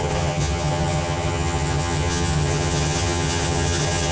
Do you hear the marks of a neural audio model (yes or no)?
yes